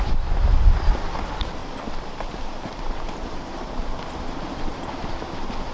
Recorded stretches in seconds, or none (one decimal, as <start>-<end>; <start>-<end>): 0.0-1.6; 4.0-5.7